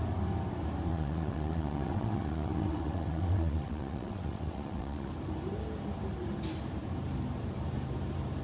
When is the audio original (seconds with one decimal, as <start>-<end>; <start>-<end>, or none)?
0.0-0.9; 5.1-8.4